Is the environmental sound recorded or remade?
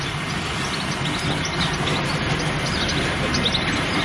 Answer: recorded